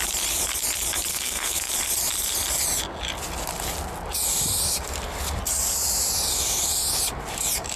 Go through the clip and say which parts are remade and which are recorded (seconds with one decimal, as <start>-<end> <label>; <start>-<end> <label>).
0.0-1.1 recorded; 1.1-1.7 remade; 1.7-7.8 recorded